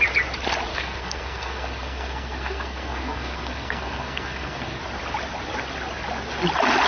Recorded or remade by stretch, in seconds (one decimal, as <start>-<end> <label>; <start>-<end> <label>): 0.0-0.7 recorded; 0.7-4.8 remade; 4.8-6.9 recorded